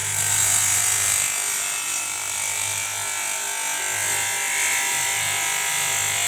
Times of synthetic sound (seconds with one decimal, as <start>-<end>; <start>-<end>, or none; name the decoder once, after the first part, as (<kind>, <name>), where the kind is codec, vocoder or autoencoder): 4.9-5.7 (vocoder, BigVGAN v2)